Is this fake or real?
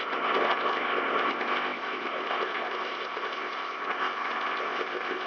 fake